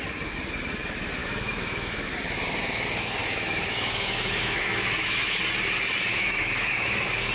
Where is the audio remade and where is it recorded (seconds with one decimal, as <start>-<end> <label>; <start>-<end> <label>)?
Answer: 0.0-1.2 recorded; 1.2-2.1 remade; 2.1-3.2 recorded; 3.2-5.4 remade; 5.4-6.1 recorded; 6.1-7.3 remade